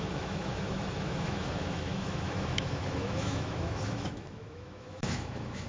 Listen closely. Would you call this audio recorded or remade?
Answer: remade